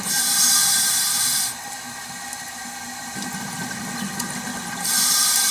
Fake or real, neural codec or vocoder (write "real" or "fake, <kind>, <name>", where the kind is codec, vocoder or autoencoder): real